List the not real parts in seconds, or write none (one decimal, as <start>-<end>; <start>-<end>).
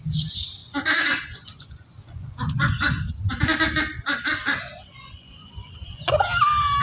0.6-3.1; 4.9-6.1